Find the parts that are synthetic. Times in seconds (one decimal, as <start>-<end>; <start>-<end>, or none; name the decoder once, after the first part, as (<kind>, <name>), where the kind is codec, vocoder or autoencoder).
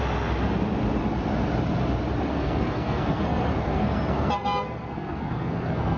2.3-6.0 (codec, SNAC)